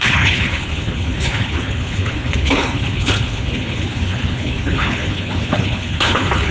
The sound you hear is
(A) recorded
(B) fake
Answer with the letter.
B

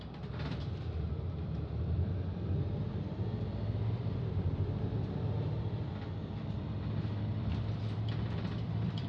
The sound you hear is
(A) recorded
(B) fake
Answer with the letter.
B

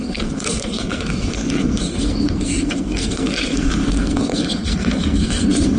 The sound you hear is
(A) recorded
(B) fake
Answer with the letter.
B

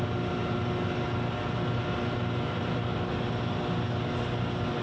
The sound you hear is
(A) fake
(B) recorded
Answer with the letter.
B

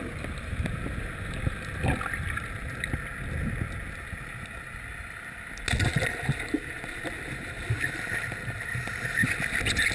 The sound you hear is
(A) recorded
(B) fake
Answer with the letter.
A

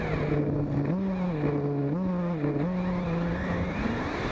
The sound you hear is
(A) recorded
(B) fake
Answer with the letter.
A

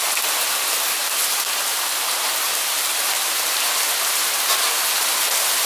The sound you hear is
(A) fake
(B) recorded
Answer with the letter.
B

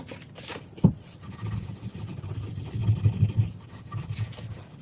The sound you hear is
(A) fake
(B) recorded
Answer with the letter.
B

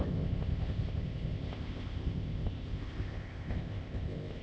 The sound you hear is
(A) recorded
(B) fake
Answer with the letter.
B